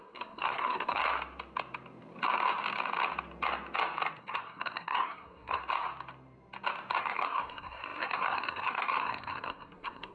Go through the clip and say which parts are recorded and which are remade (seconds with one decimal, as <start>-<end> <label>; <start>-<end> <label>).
0.0-1.0 remade; 1.0-4.2 recorded; 4.2-5.6 remade; 5.6-7.0 recorded; 7.0-10.1 remade